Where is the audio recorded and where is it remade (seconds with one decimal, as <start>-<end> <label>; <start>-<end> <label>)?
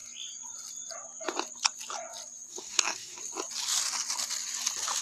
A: 0.0-2.5 recorded; 2.5-3.2 remade; 3.2-5.0 recorded